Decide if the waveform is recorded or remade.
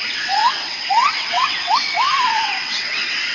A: remade